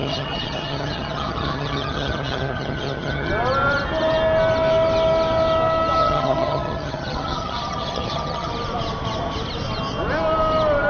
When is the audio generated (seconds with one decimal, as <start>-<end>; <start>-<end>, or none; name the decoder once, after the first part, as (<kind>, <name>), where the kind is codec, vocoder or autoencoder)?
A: 0.0-3.3 (vocoder, HiFi-GAN); 6.0-8.5